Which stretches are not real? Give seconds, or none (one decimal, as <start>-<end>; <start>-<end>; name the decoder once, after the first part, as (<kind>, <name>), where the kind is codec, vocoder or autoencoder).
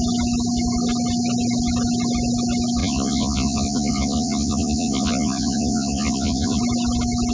2.8-6.6 (vocoder, Vocos)